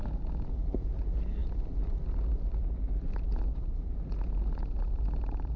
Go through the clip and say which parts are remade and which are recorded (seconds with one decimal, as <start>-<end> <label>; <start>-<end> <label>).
0.0-5.6 recorded